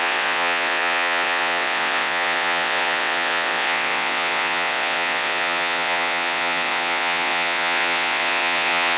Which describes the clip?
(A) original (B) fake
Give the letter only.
B